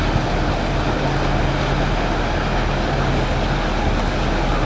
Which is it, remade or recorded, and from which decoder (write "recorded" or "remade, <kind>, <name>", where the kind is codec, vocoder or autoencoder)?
recorded